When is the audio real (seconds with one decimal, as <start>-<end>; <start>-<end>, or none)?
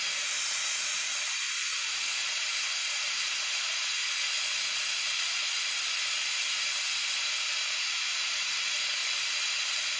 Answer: 0.0-1.7; 3.7-6.4; 8.6-10.0